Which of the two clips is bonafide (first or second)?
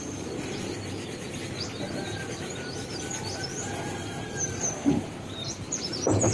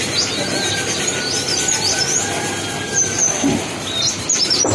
second